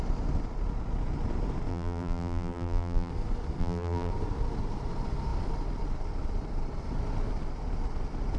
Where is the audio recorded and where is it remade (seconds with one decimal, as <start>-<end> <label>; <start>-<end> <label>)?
0.0-1.7 recorded; 1.7-3.1 remade; 3.1-3.6 recorded; 3.6-4.1 remade; 4.1-8.4 recorded